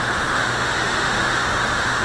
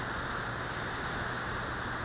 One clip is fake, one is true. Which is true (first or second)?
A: second